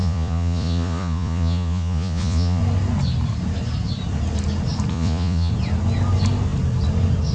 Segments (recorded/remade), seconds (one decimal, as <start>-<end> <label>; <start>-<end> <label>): 0.0-2.6 remade; 2.6-4.9 recorded; 4.9-5.5 remade; 5.5-7.3 recorded